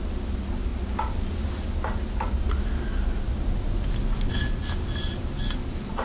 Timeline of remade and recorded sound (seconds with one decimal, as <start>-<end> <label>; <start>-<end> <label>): 0.0-6.0 recorded